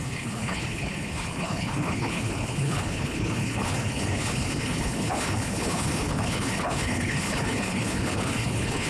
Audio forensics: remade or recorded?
remade